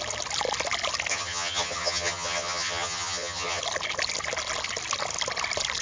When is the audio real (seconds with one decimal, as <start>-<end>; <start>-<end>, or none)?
0.0-1.1; 3.6-5.8